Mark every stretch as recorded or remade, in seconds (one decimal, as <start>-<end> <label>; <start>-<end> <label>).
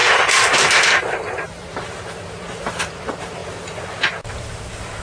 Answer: 0.0-3.4 remade; 3.4-4.3 recorded; 4.3-5.0 remade